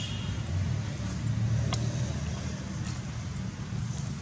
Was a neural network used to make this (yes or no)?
no